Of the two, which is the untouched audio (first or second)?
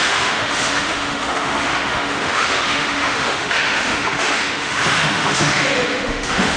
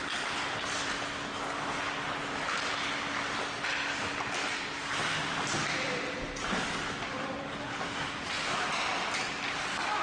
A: second